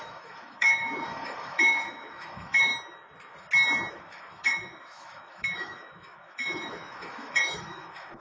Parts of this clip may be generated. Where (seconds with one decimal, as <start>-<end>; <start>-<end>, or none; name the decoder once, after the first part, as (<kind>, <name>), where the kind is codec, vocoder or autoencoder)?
0.0-2.7 (autoencoder, DAC-VAE); 3.9-8.2